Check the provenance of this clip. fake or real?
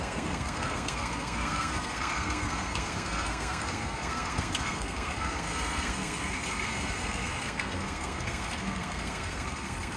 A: fake